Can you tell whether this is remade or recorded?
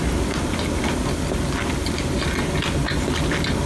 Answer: recorded